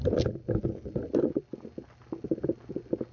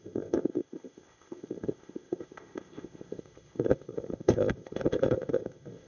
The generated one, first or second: second